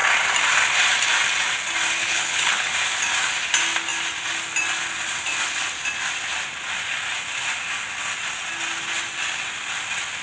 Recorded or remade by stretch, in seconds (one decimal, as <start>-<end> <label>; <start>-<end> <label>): 0.0-2.0 recorded; 2.0-2.7 remade; 2.7-10.2 recorded